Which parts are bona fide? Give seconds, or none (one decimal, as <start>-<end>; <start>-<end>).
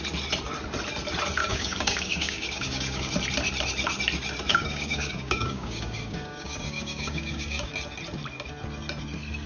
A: 0.0-1.4; 3.1-4.5; 7.7-9.5